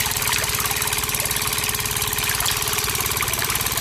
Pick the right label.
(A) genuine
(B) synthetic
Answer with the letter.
A